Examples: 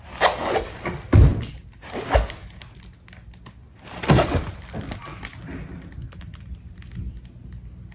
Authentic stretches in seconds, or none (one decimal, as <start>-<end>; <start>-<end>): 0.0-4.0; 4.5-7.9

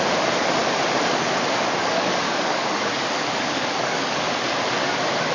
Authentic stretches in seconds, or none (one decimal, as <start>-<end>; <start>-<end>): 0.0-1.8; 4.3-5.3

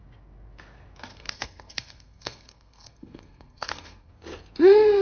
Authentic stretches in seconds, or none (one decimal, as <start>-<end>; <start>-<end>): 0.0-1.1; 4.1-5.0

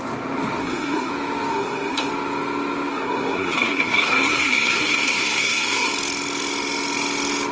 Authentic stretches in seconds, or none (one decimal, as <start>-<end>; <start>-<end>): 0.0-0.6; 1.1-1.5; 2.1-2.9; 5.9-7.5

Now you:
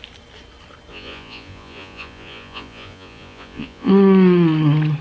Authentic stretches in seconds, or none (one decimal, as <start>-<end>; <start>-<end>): 0.0-0.9; 3.9-5.0

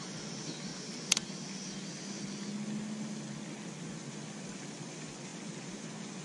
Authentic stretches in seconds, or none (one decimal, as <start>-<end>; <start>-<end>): 0.7-3.8

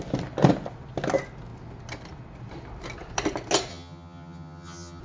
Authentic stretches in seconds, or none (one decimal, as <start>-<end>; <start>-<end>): 0.0-3.7

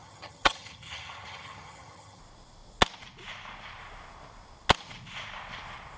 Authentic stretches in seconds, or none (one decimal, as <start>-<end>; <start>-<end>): 2.2-6.0